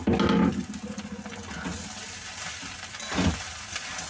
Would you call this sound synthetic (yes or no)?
no